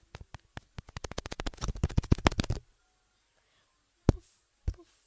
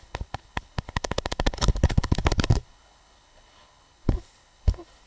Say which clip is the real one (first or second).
first